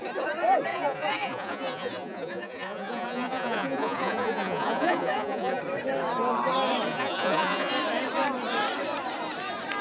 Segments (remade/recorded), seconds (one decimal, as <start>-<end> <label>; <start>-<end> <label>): 0.0-0.7 recorded; 0.7-5.6 remade; 5.6-6.9 recorded; 6.9-7.7 remade; 7.7-9.8 recorded